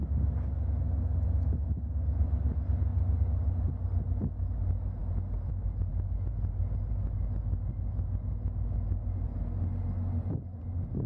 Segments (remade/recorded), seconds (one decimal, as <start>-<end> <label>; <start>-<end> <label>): 0.0-11.1 recorded

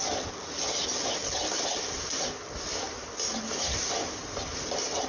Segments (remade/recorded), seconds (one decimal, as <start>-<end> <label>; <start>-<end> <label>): 0.0-5.1 recorded

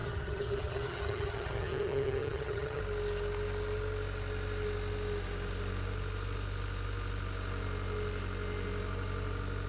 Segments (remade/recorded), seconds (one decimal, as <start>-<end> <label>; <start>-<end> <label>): 0.0-2.8 remade; 2.8-9.7 recorded

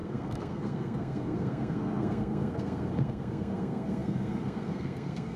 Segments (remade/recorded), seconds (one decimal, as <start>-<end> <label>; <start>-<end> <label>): 0.0-5.4 remade

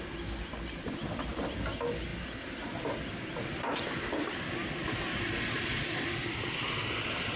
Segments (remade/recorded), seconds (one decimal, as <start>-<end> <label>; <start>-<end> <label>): 0.0-7.4 recorded